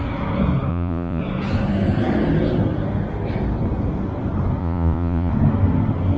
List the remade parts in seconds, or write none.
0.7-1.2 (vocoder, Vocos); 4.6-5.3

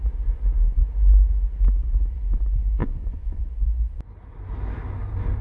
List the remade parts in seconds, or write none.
2.8-3.4 (vocoder, Vocos)

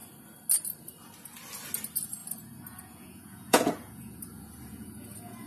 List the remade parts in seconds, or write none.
2.2-5.5 (vocoder, Vocos)

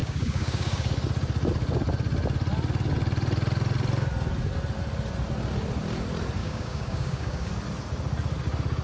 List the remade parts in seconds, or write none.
0.0-0.9 (codec, DAC); 6.4-7.5

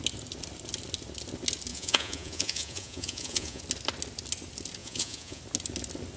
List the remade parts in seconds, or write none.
1.7-3.6 (vocoder, Vocos); 4.8-5.4

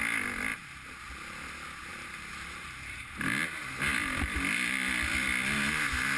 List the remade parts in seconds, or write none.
0.5-1.0 (vocoder, BigVGAN v2); 1.9-3.1

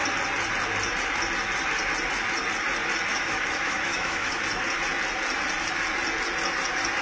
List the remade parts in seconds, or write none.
3.1-4.4 (autoencoder, DAC-VAE)